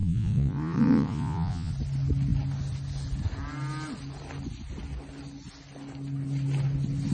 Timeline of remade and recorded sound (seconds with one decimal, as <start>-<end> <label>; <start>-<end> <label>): 0.0-1.7 remade; 1.7-7.1 recorded